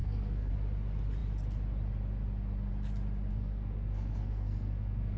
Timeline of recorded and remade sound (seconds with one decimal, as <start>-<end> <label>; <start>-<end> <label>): 0.0-0.5 remade; 0.5-3.3 recorded; 3.3-5.2 remade